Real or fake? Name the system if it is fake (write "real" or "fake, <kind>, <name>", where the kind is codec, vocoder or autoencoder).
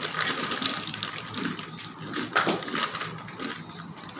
real